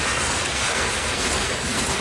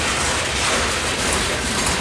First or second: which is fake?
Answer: first